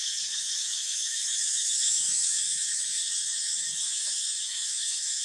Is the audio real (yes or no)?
no